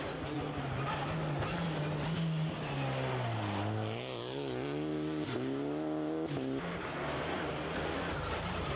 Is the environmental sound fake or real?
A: real